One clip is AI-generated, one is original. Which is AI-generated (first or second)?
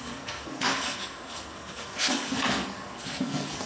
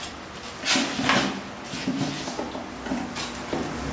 first